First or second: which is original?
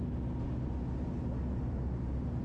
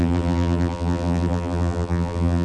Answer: first